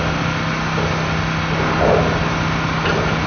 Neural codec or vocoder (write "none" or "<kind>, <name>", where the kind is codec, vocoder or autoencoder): none